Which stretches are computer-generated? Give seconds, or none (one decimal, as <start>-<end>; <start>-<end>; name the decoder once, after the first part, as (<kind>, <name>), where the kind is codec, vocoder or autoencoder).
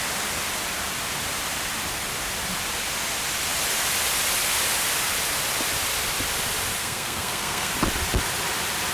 6.8-7.7 (codec, SNAC)